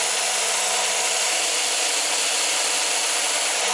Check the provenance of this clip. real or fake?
real